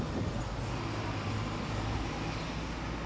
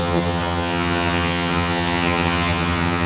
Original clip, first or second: first